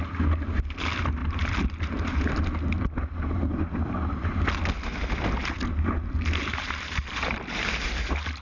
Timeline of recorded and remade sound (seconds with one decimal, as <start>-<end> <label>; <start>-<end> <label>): 0.0-1.2 recorded; 1.2-2.3 remade; 2.3-6.4 recorded; 6.4-8.4 remade